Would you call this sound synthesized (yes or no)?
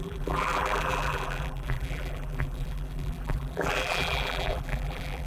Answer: yes